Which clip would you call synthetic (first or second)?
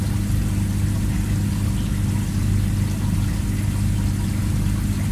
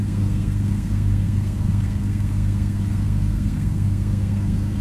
second